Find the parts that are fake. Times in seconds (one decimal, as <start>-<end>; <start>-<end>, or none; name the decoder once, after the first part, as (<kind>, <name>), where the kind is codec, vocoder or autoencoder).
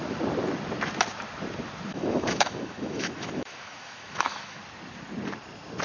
1.9-4.6 (autoencoder, DAC-VAE)